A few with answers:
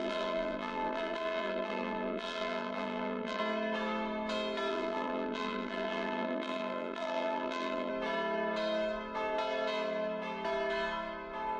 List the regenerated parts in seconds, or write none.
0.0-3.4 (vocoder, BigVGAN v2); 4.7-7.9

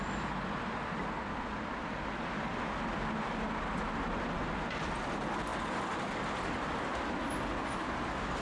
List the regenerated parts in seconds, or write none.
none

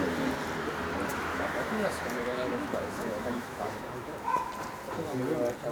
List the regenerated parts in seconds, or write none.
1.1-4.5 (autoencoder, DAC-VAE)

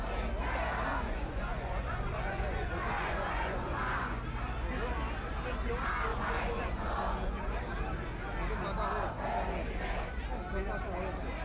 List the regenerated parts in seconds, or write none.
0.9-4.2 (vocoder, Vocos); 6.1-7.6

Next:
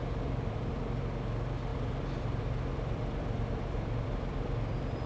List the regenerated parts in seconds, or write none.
0.0-0.8 (vocoder, BigVGAN v2); 1.7-5.1

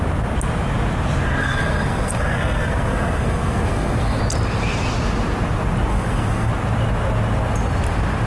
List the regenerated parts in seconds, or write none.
1.4-4.2 (codec, SNAC); 5.9-6.5